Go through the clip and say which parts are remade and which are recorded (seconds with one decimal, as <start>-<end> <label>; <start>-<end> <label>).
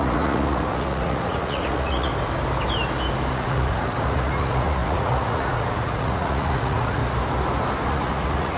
0.0-2.1 remade; 2.1-3.3 recorded; 3.3-7.0 remade; 7.0-7.9 recorded; 7.9-8.6 remade